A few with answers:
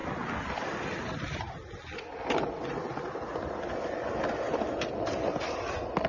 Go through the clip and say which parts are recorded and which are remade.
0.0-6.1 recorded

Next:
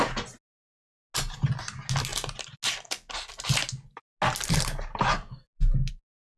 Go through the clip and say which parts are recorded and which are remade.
0.0-6.4 recorded

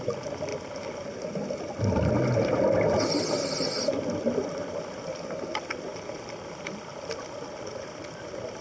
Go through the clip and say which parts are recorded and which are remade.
0.0-8.6 recorded